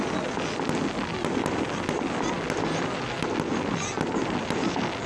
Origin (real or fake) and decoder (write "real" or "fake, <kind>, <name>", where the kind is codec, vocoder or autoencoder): real